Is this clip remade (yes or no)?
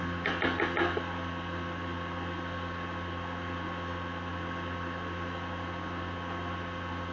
no